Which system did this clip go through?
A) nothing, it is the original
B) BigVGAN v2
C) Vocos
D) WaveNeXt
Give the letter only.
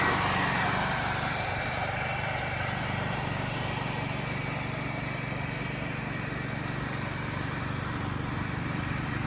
B